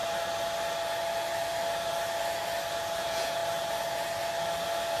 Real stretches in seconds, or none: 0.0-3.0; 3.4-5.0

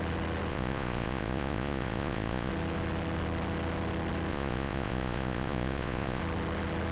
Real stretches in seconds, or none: 0.0-0.5; 2.5-4.3; 6.2-6.9

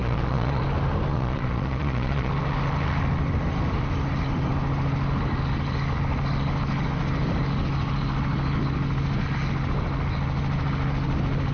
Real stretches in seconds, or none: 0.6-1.1; 2.3-11.5

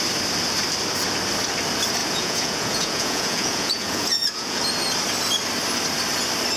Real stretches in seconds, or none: 0.0-2.0; 4.6-6.6

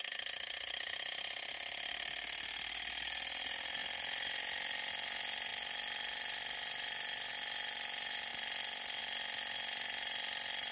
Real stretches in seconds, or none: 0.0-10.7